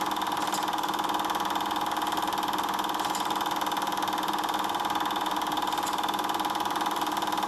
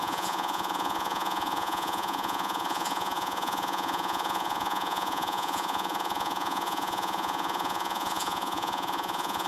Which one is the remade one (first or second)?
second